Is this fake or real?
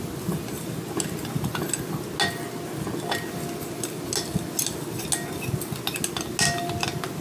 real